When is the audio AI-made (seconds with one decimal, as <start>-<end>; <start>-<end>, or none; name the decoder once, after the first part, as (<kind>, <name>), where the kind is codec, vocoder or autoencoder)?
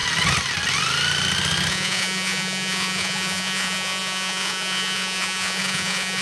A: 1.7-6.2 (vocoder, Vocos)